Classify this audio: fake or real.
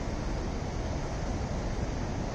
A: real